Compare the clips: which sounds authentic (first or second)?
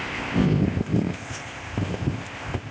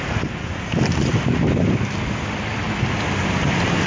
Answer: second